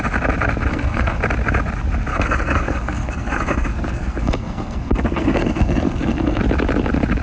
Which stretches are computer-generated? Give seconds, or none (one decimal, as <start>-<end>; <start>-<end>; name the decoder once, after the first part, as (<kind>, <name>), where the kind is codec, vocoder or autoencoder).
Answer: 0.7-1.2 (codec, SNAC); 2.1-6.4